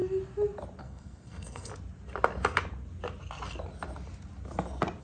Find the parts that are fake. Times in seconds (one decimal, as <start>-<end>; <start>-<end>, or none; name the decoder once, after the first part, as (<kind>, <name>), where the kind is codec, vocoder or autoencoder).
0.8-1.7 (codec, SNAC)